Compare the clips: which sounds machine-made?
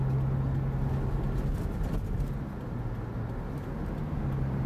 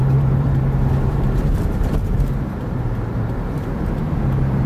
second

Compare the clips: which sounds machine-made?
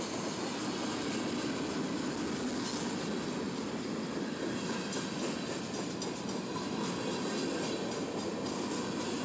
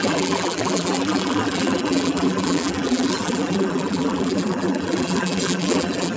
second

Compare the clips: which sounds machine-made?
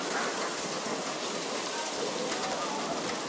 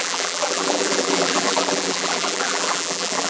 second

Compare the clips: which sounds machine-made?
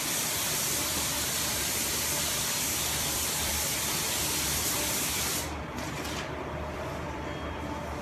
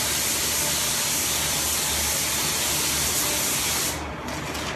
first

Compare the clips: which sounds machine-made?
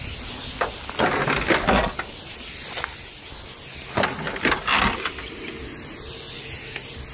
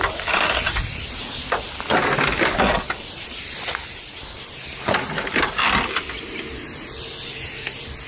second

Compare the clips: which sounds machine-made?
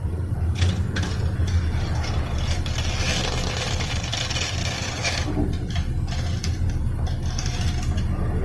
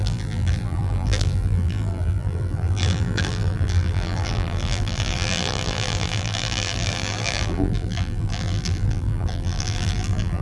second